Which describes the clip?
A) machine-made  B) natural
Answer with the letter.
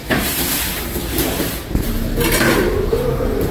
A